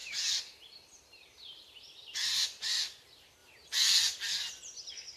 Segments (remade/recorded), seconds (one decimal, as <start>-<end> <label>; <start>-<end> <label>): 0.0-2.7 remade; 2.7-3.4 recorded; 3.4-3.9 remade; 3.9-5.2 recorded